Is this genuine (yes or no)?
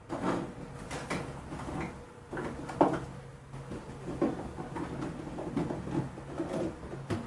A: yes